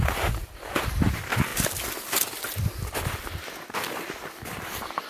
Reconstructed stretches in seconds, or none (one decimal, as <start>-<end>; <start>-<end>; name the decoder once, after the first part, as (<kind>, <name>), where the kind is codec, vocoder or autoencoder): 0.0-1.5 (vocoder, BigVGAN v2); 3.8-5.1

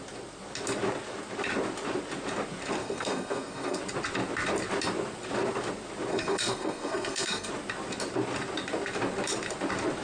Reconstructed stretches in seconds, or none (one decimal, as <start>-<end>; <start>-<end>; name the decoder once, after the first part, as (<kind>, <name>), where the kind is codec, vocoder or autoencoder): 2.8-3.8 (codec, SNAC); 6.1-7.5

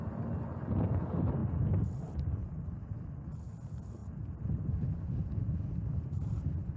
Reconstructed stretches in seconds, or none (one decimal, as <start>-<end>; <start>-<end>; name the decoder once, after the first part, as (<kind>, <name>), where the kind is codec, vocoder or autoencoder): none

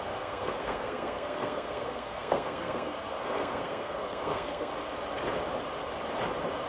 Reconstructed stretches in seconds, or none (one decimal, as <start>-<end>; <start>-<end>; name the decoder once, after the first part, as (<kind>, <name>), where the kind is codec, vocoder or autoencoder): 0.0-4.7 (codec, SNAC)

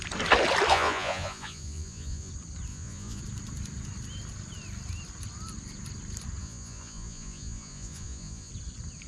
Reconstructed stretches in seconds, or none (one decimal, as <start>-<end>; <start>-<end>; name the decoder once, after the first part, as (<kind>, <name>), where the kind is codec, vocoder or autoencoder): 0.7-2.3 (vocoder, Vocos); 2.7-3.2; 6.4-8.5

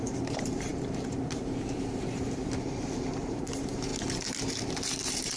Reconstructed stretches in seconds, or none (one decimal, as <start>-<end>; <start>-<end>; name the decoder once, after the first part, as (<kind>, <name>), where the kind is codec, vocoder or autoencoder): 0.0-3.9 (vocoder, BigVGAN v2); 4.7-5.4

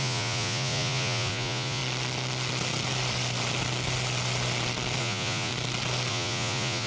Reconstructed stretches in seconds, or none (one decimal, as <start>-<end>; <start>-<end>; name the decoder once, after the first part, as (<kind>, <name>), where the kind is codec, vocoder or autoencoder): 0.0-1.8 (vocoder, Vocos); 5.0-5.5; 6.1-6.9